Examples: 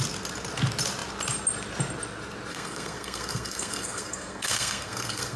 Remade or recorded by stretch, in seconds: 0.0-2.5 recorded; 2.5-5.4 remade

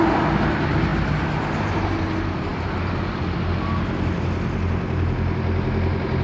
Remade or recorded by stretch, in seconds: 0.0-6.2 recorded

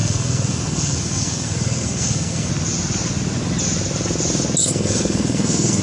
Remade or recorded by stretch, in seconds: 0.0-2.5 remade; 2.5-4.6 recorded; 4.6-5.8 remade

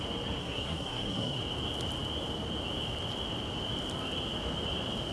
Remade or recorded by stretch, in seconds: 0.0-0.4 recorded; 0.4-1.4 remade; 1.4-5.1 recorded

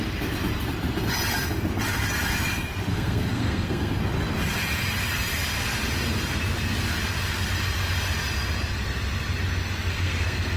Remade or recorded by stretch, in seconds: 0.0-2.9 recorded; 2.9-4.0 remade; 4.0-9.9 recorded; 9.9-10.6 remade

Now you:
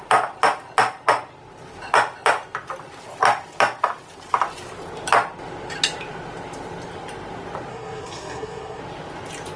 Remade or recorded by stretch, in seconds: 0.0-7.7 recorded; 7.7-8.8 remade; 8.8-9.6 recorded

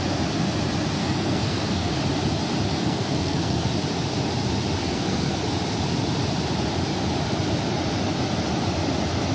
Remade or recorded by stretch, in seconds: 0.0-1.0 recorded; 1.0-1.9 remade; 1.9-2.7 recorded; 2.7-3.7 remade; 3.7-4.8 recorded; 4.8-5.4 remade; 5.4-9.3 recorded

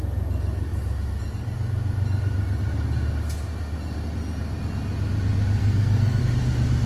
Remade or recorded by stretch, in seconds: 0.0-5.6 recorded; 5.6-6.2 remade; 6.2-6.9 recorded